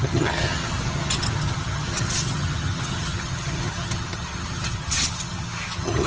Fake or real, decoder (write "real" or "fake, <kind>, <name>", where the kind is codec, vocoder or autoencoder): fake, vocoder, HiFi-GAN